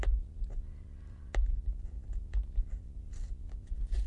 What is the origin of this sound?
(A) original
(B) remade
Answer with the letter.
A